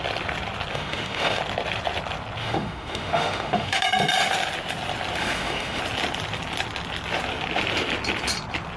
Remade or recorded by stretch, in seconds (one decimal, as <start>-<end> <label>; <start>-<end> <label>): 0.0-0.7 recorded; 0.7-1.4 remade; 1.4-2.4 recorded; 2.4-3.8 remade; 3.8-5.2 recorded; 5.2-5.8 remade; 5.8-8.8 recorded